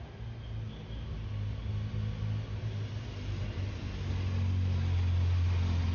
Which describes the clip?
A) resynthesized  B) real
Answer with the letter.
B